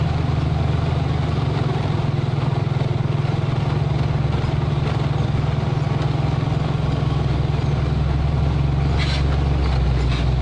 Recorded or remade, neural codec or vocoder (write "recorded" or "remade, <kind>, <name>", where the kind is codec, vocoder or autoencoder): recorded